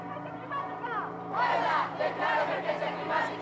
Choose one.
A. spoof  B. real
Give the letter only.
A